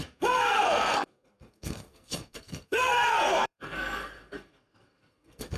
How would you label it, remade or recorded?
remade